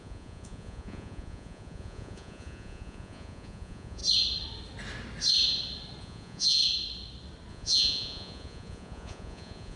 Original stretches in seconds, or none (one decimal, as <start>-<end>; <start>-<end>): 4.0-6.0; 6.6-7.5